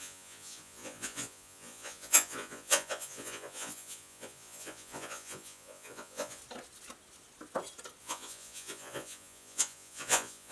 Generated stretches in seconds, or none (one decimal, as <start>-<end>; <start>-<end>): 0.0-6.4; 8.0-10.5